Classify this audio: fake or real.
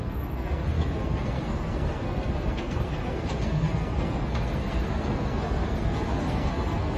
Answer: fake